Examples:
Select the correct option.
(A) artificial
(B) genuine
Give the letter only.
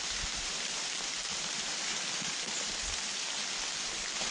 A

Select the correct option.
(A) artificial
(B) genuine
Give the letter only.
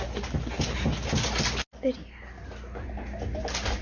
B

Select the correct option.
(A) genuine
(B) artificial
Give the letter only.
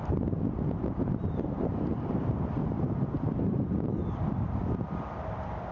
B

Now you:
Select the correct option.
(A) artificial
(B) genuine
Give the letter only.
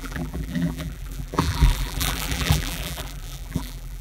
A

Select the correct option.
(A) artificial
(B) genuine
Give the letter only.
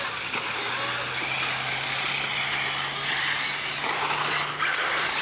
B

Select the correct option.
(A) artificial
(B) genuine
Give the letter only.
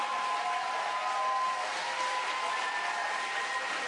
B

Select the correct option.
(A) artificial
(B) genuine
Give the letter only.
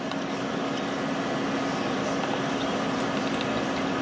B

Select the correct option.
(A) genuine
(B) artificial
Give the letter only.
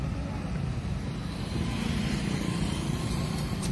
B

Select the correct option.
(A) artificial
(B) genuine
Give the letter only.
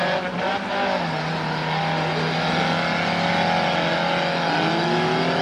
B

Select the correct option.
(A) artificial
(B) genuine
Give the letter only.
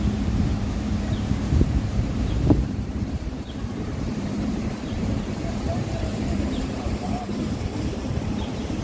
A